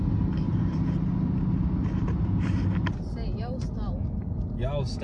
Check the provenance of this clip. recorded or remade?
recorded